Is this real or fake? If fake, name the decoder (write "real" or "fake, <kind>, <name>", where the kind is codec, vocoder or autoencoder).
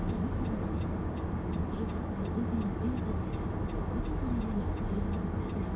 real